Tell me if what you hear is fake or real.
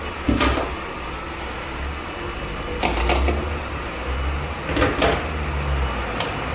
real